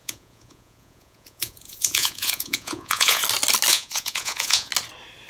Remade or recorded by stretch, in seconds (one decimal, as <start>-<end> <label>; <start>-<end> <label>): 0.0-3.2 remade; 3.2-3.7 recorded; 3.7-4.7 remade; 4.7-5.3 recorded